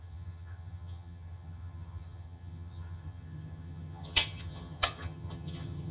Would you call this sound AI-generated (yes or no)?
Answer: yes